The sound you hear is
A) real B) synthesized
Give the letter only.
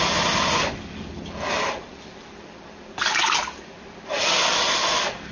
A